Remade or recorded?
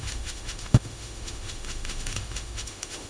remade